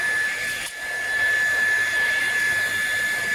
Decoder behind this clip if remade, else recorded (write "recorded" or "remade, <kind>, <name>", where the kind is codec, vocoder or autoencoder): recorded